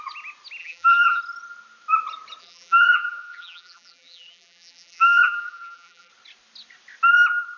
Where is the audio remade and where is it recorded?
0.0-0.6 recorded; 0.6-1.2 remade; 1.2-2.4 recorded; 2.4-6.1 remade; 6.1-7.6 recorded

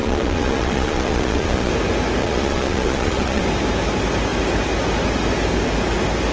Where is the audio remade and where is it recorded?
0.0-1.7 remade; 1.7-2.2 recorded; 2.2-3.4 remade; 3.4-6.3 recorded

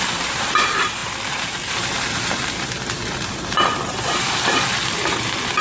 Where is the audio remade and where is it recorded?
0.0-5.6 remade

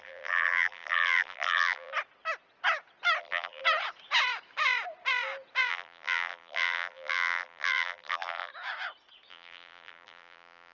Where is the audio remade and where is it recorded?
0.0-1.9 remade; 1.9-3.2 recorded; 3.2-3.6 remade; 3.6-5.7 recorded; 5.7-8.5 remade; 8.5-9.3 recorded; 9.3-10.7 remade

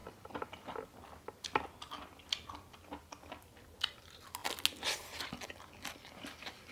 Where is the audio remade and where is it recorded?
0.0-6.7 recorded

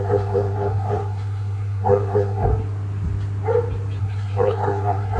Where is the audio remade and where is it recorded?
0.0-2.5 remade; 2.5-4.0 recorded; 4.0-5.2 remade

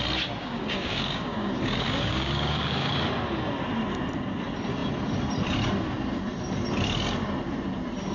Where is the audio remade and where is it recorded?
0.0-0.4 recorded; 0.4-2.9 remade; 2.9-8.1 recorded

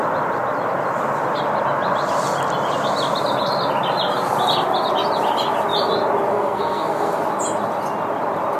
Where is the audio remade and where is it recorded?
0.0-6.3 recorded; 6.3-7.2 remade; 7.2-8.6 recorded